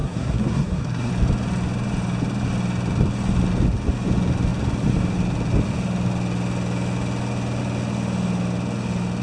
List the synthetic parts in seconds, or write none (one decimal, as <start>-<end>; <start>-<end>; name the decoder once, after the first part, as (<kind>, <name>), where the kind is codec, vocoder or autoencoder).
0.0-1.1 (codec, SNAC)